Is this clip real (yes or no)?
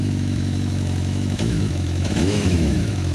no